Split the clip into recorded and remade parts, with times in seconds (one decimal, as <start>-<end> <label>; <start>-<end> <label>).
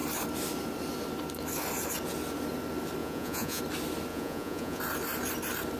0.0-3.0 recorded; 3.0-3.6 remade; 3.6-4.1 recorded; 4.1-4.8 remade; 4.8-5.8 recorded